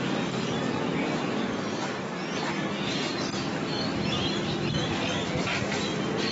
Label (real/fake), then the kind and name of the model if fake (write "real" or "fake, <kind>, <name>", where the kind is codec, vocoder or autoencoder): real